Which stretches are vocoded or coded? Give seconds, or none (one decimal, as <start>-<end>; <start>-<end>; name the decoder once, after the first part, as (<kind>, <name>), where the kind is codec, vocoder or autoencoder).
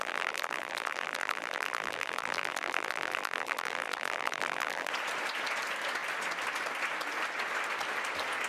0.0-4.9 (vocoder, BigVGAN v2)